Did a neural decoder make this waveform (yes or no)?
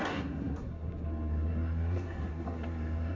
yes